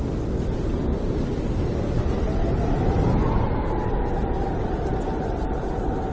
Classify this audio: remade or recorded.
recorded